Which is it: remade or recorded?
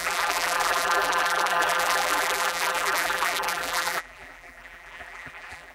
remade